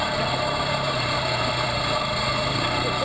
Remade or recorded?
remade